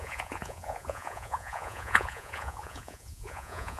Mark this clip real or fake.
fake